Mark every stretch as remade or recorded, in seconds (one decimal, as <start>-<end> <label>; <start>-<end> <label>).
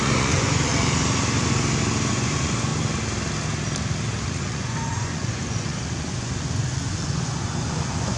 0.0-0.7 remade; 0.7-2.1 recorded; 2.1-2.7 remade; 2.7-4.4 recorded; 4.4-8.2 remade